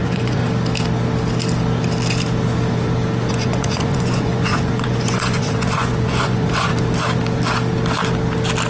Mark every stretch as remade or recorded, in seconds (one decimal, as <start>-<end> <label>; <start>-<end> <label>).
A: 0.0-0.4 remade; 0.4-3.3 recorded; 3.3-6.7 remade; 6.7-8.7 recorded